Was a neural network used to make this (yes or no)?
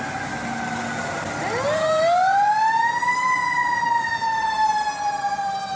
no